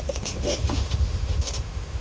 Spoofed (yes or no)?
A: yes